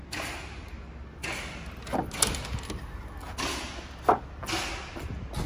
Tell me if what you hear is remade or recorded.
recorded